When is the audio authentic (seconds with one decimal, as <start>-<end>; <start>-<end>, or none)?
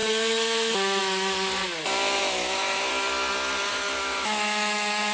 1.6-2.2; 2.9-3.7